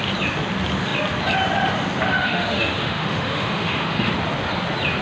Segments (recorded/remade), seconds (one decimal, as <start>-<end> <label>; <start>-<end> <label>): 0.0-2.1 recorded; 2.1-4.1 remade; 4.1-5.0 recorded